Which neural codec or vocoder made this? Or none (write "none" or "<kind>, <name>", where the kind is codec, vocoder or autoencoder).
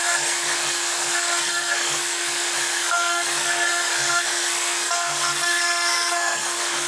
codec, SNAC